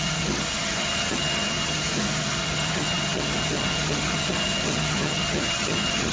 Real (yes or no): no